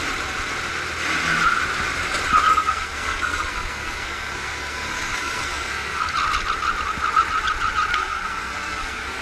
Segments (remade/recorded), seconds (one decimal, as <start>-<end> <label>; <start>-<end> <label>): 0.0-2.5 recorded; 2.5-6.0 remade; 6.0-7.9 recorded; 7.9-9.2 remade